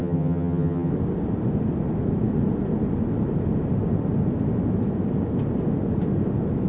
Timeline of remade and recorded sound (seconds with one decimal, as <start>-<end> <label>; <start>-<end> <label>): 0.0-0.9 remade; 0.9-6.7 recorded